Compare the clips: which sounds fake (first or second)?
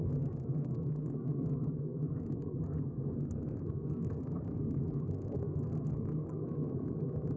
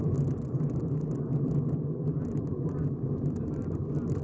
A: first